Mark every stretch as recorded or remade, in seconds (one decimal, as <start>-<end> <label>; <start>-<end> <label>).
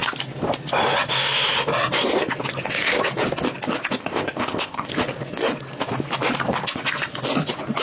0.0-4.0 recorded; 4.0-4.9 remade; 4.9-7.8 recorded